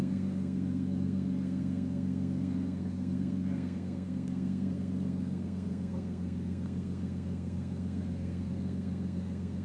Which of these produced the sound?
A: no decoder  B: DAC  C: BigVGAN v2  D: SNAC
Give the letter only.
D